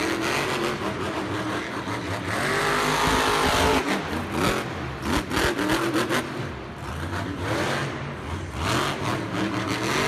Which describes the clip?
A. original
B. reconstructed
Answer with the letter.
A